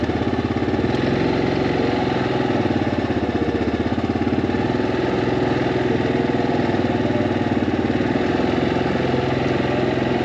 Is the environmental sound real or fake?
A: real